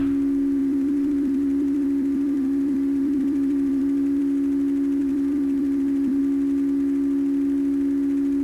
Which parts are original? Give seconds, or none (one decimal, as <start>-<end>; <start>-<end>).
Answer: 0.0-0.6; 4.2-5.0; 6.2-8.4